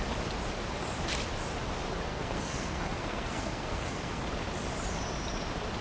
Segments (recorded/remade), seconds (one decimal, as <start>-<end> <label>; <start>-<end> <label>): 0.0-2.1 recorded; 2.1-4.2 remade; 4.2-5.8 recorded